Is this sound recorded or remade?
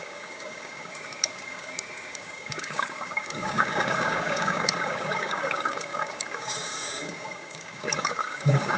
remade